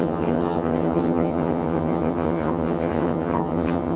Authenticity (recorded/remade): remade